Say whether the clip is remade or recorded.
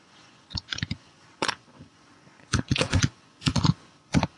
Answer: remade